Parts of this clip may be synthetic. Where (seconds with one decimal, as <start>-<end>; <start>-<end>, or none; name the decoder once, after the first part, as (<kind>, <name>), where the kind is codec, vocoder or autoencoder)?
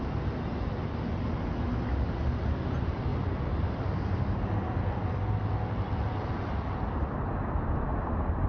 3.1-8.5 (vocoder, BigVGAN v2)